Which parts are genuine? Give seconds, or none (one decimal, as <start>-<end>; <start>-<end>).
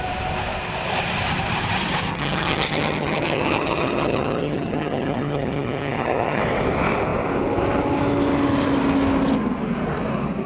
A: 0.0-2.1; 6.4-10.5